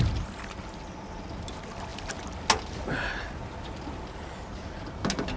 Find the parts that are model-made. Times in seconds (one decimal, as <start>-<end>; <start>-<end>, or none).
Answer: none